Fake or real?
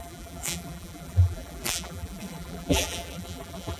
fake